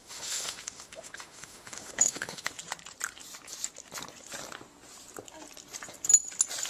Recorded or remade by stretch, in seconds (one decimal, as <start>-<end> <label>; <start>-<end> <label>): 0.0-2.5 remade; 2.5-6.7 recorded